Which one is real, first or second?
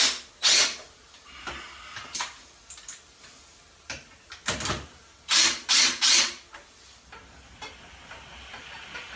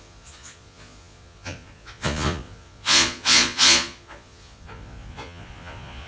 first